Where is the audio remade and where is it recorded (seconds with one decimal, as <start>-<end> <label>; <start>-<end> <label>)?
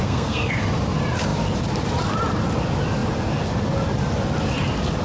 0.0-0.6 remade; 0.6-5.0 recorded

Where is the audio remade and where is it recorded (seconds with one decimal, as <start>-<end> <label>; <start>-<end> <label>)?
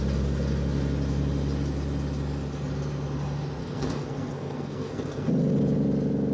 0.0-3.6 recorded; 3.6-5.3 remade; 5.3-6.3 recorded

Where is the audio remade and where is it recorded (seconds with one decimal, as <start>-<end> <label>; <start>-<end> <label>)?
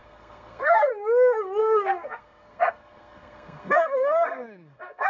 0.0-0.9 remade; 0.9-1.6 recorded; 1.6-5.1 remade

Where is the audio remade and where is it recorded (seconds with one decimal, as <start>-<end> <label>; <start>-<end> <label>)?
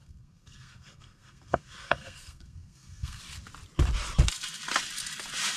0.0-3.2 remade; 3.2-5.6 recorded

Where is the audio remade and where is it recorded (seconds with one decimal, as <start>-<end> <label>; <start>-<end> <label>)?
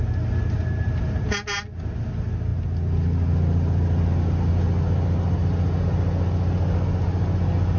0.0-7.8 recorded